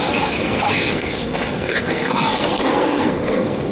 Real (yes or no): no